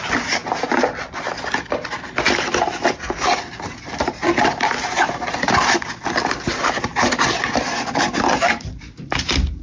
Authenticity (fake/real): real